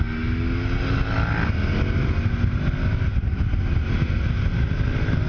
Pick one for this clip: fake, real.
real